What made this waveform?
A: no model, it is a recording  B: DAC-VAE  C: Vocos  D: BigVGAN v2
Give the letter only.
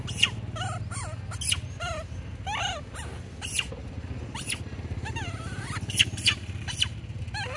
A